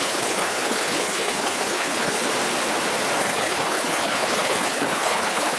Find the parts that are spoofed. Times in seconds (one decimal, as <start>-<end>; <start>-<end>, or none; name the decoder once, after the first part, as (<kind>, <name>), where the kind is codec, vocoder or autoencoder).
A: 0.0-2.3 (codec, HILCodec); 3.2-5.6